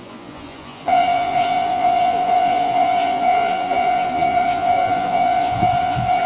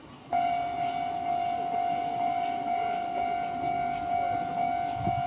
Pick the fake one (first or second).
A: first